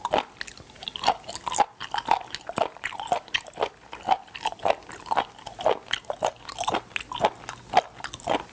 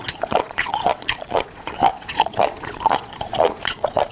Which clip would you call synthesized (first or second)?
second